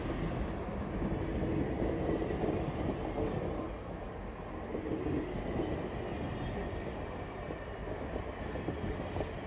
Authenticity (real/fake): real